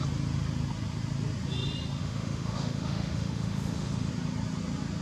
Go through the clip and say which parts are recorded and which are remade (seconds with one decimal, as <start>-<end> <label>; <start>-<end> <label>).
0.0-2.0 recorded; 2.0-4.1 remade; 4.1-5.0 recorded